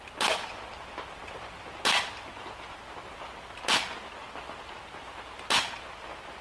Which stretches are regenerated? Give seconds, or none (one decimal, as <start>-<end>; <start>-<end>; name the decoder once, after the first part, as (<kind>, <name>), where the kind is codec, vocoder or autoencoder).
none